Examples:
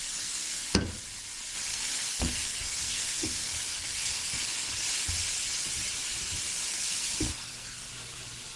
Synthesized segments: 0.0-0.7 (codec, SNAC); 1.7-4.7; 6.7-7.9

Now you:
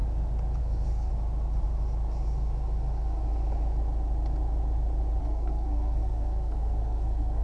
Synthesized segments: 0.6-1.1 (codec, SNAC); 5.2-7.4

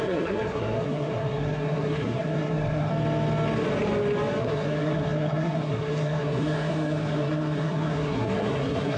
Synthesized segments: 0.0-2.9 (codec, SNAC); 4.4-9.0

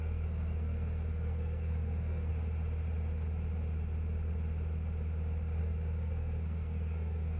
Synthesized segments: 0.0-2.3 (codec, SNAC); 5.6-7.4

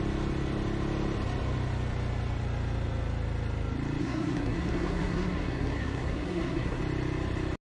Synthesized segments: 4.0-6.8 (codec, SNAC)